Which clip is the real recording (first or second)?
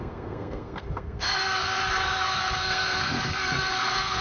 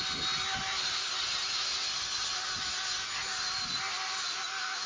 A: second